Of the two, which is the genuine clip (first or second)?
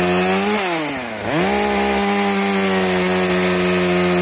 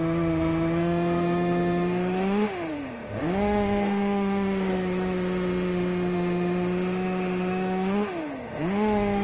first